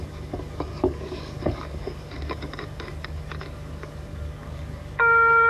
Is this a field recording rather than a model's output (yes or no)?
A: no